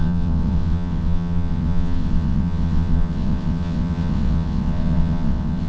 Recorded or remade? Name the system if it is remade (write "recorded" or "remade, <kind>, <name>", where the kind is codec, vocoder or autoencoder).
remade, vocoder, WaveNeXt